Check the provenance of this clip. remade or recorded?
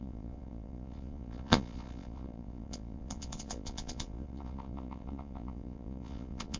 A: remade